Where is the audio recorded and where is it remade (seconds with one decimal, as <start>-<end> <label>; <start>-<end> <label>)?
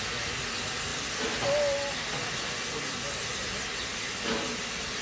0.0-5.0 recorded